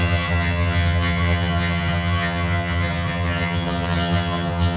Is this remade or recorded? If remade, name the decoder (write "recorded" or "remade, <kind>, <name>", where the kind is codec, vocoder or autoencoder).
remade, vocoder, HiFi-GAN